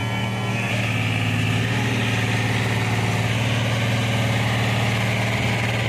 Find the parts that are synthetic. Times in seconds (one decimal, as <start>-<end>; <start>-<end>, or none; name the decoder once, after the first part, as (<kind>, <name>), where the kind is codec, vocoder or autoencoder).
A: 0.0-0.7 (codec, SNAC)